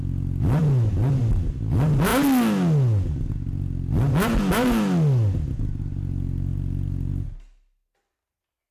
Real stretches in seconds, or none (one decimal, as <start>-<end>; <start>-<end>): 0.0-6.5; 7.1-8.7